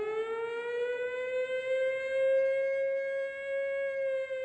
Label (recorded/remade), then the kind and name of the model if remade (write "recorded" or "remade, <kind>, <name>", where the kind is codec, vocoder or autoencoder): recorded